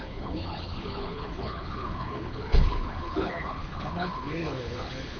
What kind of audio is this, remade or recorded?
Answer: remade